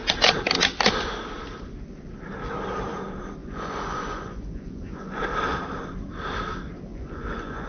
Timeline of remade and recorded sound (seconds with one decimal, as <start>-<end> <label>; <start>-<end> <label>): 0.0-3.4 recorded; 3.4-5.2 remade; 5.2-6.9 recorded; 6.9-7.7 remade